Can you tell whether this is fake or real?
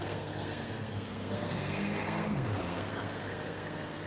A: fake